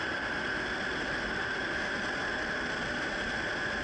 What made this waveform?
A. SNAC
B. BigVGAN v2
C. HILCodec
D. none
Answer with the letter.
D